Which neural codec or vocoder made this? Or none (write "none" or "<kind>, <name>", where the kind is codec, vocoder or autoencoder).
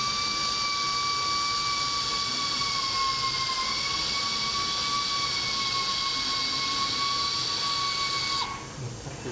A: none